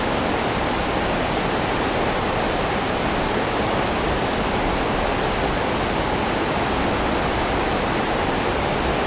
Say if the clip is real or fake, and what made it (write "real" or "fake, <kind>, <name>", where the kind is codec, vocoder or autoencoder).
real